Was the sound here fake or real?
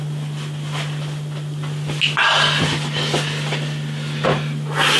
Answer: real